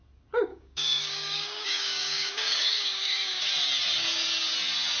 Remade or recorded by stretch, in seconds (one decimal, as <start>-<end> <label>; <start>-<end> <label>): 0.0-0.5 recorded; 0.5-3.5 remade; 3.5-5.0 recorded